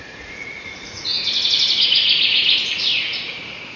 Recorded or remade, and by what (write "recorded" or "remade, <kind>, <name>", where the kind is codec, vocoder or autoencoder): remade, vocoder, Vocos